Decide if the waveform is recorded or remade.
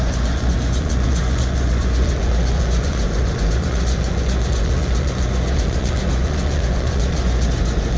remade